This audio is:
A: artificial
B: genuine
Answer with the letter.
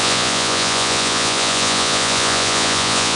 A